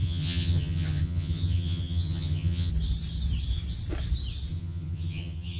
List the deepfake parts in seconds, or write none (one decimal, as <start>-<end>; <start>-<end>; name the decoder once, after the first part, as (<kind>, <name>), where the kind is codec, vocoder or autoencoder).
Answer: 0.0-2.7 (vocoder, HiFi-GAN); 4.5-5.6